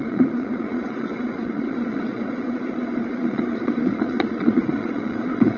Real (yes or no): no